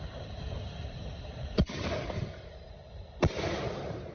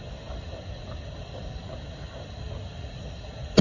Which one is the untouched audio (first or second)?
second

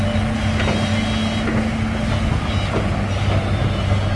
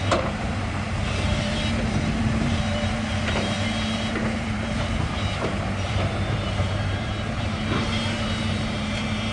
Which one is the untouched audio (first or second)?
first